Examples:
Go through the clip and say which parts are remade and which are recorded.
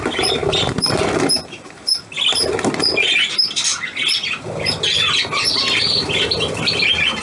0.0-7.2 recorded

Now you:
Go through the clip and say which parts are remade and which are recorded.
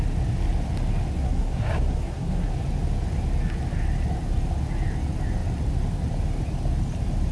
0.0-1.2 recorded; 1.2-2.5 remade; 2.5-7.3 recorded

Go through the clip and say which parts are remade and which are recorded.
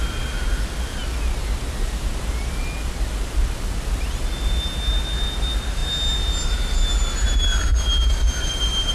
0.0-8.9 recorded